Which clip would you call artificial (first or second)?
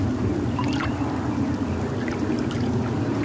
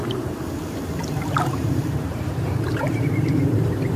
second